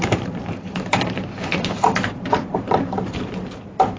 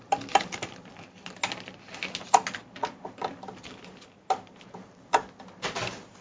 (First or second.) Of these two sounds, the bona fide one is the second